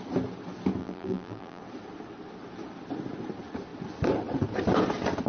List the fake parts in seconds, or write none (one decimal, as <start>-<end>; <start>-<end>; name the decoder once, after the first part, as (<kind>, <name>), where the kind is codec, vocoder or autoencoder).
0.8-1.6 (vocoder, BigVGAN v2)